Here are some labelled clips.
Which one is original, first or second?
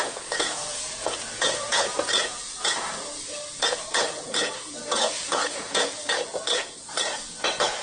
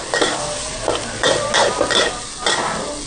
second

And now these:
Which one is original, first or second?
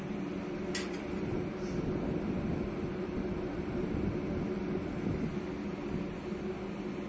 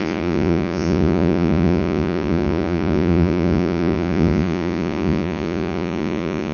first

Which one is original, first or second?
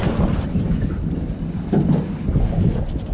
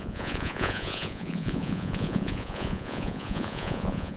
first